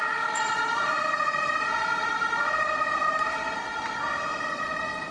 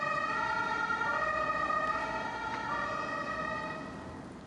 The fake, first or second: first